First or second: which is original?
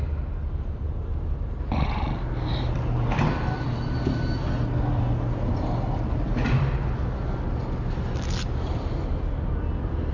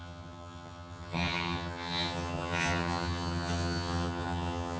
first